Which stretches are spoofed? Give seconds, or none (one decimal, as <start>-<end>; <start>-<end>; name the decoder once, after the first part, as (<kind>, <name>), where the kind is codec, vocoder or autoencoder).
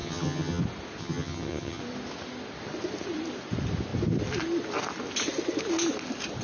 0.0-0.6 (vocoder, HiFi-GAN); 1.0-1.8